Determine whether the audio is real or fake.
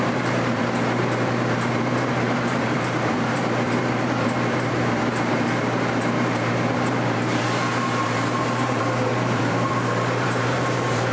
fake